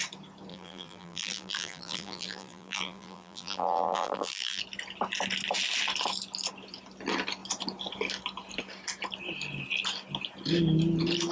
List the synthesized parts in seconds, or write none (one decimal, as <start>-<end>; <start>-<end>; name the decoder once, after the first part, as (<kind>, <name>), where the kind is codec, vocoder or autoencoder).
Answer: 0.5-4.6 (vocoder, BigVGAN v2)